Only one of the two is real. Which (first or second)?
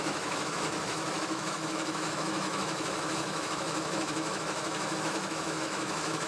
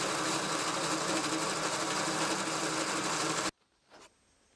second